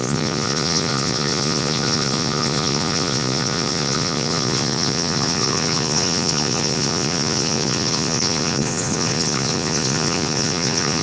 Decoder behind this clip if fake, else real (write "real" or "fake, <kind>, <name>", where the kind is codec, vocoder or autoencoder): fake, vocoder, Vocos